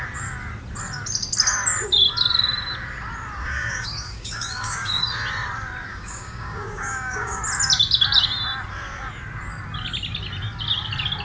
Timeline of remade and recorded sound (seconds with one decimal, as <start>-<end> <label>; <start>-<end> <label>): 0.0-3.4 recorded; 3.4-5.0 remade; 5.0-5.9 recorded; 5.9-7.4 remade; 7.4-11.2 recorded